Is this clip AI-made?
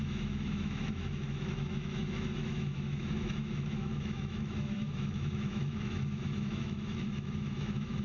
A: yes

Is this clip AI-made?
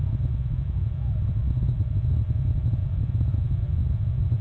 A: no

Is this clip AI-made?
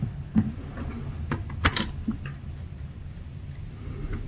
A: no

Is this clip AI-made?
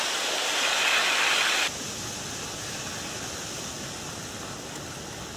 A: no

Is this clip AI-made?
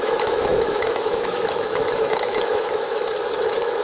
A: yes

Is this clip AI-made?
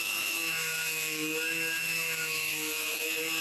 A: yes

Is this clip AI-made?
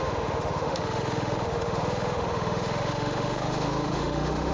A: yes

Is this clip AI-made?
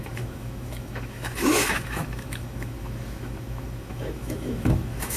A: yes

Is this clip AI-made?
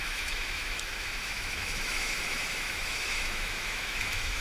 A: yes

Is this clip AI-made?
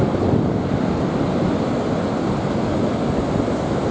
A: no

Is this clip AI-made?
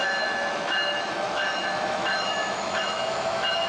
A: yes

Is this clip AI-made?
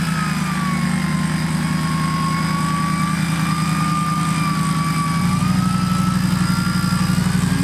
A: no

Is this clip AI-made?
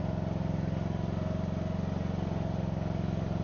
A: no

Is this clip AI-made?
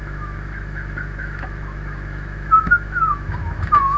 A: yes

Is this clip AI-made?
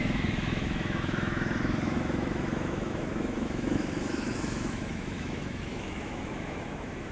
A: yes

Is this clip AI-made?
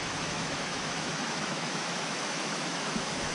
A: yes